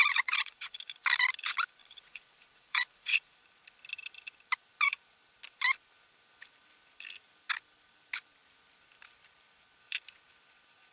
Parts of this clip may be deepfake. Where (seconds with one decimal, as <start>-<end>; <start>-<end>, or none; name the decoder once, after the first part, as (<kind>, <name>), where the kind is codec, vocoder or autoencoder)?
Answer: 0.0-0.8 (vocoder, Vocos); 1.8-3.4